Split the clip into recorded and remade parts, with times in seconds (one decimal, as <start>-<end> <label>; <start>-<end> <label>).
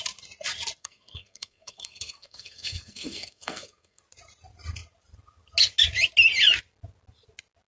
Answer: 0.0-0.8 recorded; 0.8-4.0 remade; 4.0-7.7 recorded